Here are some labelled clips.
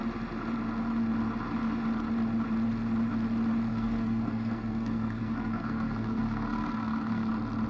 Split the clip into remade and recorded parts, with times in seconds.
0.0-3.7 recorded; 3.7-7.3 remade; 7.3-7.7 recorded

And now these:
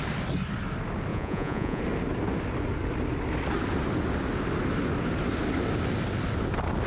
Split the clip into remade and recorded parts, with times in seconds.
0.0-1.1 recorded; 1.1-1.8 remade; 1.8-6.9 recorded

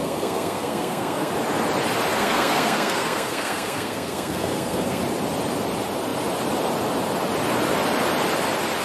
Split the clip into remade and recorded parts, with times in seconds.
0.0-1.3 remade; 1.3-2.1 recorded; 2.1-5.0 remade; 5.0-8.8 recorded

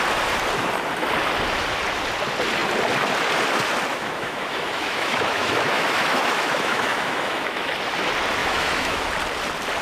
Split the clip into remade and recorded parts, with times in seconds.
0.0-3.9 recorded; 3.9-7.7 remade; 7.7-8.4 recorded; 8.4-9.1 remade; 9.1-9.8 recorded

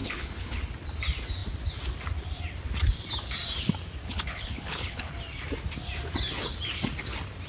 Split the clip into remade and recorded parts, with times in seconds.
0.0-0.6 remade; 0.6-4.0 recorded; 4.0-5.1 remade; 5.1-7.5 recorded

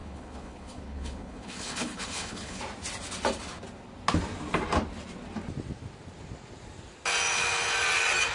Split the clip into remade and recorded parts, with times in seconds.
0.0-2.6 remade; 2.6-8.3 recorded

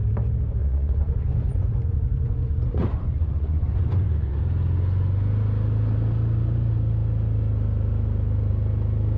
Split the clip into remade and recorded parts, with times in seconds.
0.0-0.6 recorded; 0.6-4.4 remade; 4.4-9.2 recorded